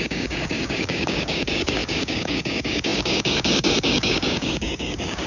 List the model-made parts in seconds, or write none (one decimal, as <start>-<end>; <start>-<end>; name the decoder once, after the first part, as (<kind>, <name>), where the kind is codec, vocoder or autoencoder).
0.0-5.3 (codec, DAC)